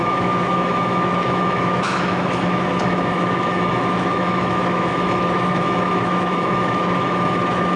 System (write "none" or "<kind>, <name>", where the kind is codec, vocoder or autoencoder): autoencoder, DAC-VAE